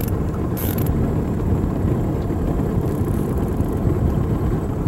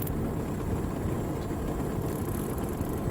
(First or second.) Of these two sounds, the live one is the second